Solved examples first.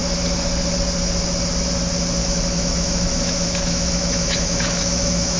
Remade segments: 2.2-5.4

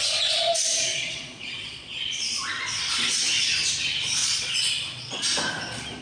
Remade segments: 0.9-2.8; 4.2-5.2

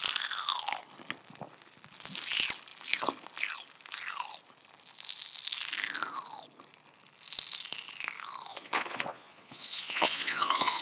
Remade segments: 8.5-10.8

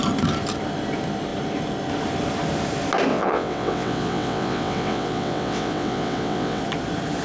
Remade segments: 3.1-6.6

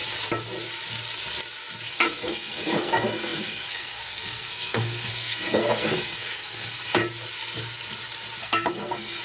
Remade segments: 1.9-7.0; 8.4-9.2

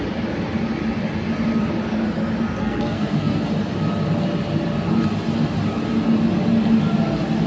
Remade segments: 2.6-3.4

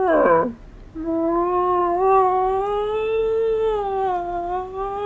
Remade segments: none

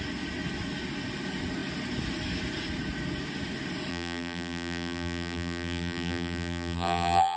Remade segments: 3.9-7.4